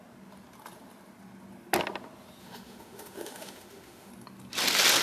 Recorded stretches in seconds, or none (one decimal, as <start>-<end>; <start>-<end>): 0.0-2.4; 4.1-5.0